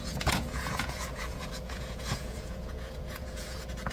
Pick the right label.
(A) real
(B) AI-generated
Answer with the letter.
B